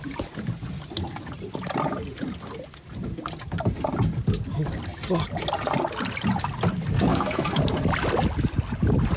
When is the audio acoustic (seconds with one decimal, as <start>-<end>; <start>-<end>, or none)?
0.0-7.1; 7.6-9.2